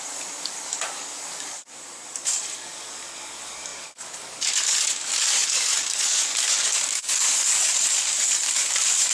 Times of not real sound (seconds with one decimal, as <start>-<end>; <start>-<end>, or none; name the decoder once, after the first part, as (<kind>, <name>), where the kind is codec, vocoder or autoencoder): 0.0-9.1 (codec, DAC)